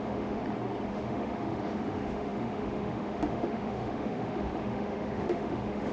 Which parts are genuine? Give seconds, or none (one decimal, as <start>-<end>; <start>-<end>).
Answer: 0.4-0.9